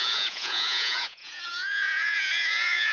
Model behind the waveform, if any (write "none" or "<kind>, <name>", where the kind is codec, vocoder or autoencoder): vocoder, Vocos